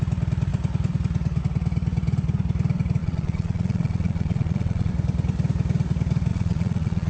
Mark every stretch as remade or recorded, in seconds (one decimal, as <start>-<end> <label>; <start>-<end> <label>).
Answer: 0.0-3.0 recorded; 3.0-4.9 remade; 4.9-6.3 recorded; 6.3-7.1 remade